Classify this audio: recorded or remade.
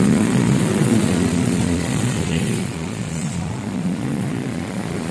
remade